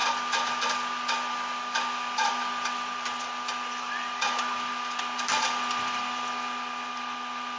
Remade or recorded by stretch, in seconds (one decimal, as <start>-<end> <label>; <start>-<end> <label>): 0.0-7.6 recorded